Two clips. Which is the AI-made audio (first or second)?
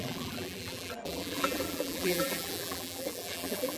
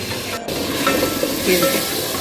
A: first